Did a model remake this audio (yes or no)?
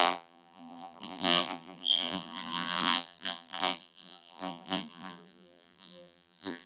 yes